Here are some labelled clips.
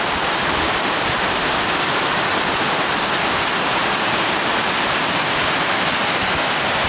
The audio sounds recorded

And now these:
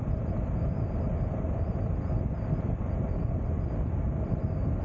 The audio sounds recorded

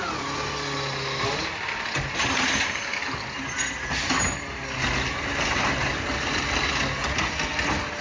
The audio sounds recorded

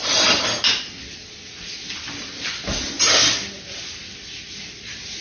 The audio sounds recorded